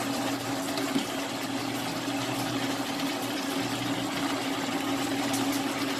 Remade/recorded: recorded